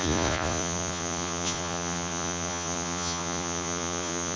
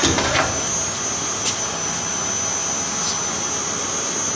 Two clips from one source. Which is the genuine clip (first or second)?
second